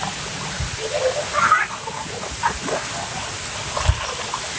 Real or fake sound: real